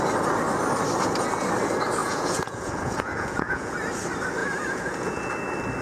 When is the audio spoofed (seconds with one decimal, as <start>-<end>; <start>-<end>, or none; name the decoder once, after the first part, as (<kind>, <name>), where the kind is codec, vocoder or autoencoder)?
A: 2.0-3.7 (vocoder, Vocos); 4.4-5.3